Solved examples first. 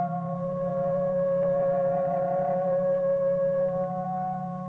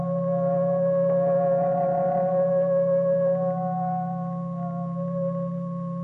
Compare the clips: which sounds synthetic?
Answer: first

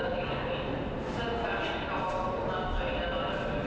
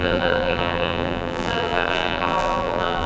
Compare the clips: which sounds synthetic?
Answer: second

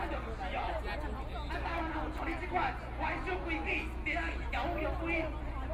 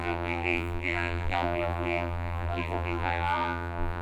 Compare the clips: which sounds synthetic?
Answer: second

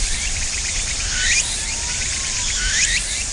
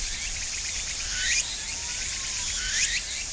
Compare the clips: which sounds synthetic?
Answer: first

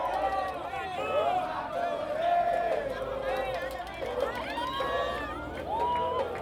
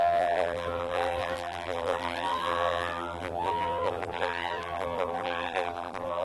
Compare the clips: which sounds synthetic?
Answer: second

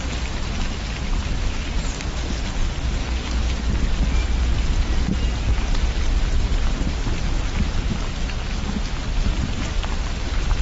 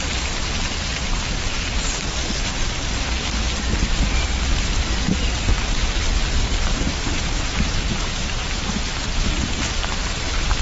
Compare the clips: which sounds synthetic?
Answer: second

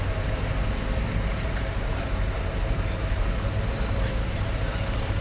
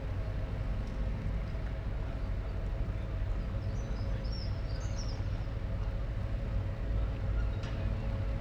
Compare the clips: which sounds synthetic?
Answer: first